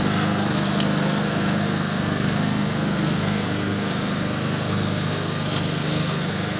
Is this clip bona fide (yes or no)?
no